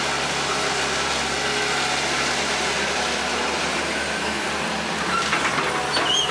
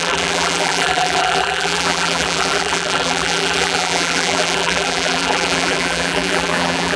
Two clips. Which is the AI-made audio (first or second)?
second